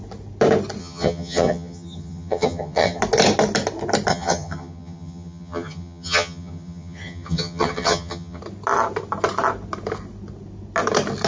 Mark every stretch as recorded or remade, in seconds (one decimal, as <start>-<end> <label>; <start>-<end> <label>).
0.0-0.8 recorded; 0.8-3.0 remade; 3.0-4.1 recorded; 4.1-8.4 remade; 8.4-11.3 recorded